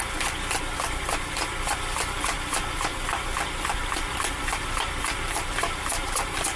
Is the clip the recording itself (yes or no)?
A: no